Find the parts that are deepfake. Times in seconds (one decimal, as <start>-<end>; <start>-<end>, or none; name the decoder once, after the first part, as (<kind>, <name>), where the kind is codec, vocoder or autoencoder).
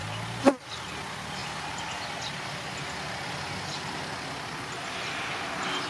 none